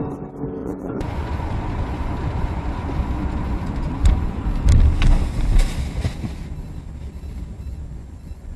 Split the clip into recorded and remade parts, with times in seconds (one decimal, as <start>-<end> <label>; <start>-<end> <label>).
0.0-0.6 recorded; 0.6-4.4 remade; 4.4-7.7 recorded; 7.7-8.6 remade